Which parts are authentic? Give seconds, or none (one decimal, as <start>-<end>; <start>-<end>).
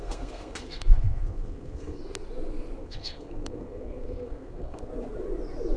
2.0-2.8; 4.9-5.8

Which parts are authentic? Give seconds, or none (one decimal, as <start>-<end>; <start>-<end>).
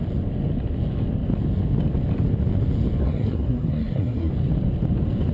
0.0-3.0; 4.3-5.3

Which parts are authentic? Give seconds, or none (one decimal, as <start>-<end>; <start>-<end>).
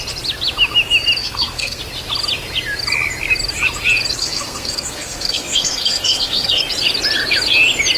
0.0-1.2; 1.8-4.2; 6.6-8.0